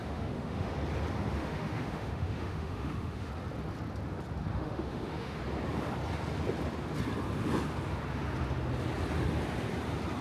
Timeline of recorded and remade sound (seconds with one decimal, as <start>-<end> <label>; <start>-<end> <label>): 0.0-0.7 remade; 0.7-1.4 recorded; 1.4-3.3 remade; 3.3-4.5 recorded; 4.5-5.4 remade; 5.4-10.2 recorded